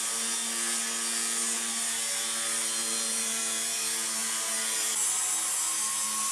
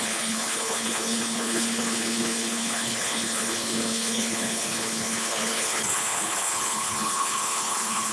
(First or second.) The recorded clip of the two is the first